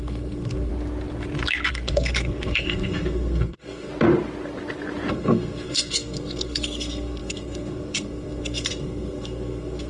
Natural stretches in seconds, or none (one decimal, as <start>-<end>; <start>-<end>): 0.7-1.7; 3.9-5.1